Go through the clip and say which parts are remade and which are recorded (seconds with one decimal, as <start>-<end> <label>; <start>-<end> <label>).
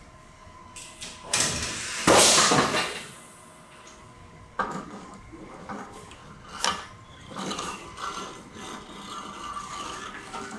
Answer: 0.0-0.6 remade; 0.6-4.0 recorded; 4.0-6.2 remade; 6.2-7.1 recorded; 7.1-7.8 remade; 7.8-9.6 recorded; 9.6-10.6 remade